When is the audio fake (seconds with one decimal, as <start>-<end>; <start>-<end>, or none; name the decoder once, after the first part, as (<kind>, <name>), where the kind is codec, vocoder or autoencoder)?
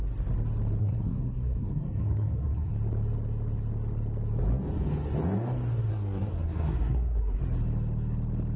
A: 0.8-2.7 (codec, SNAC); 5.9-7.4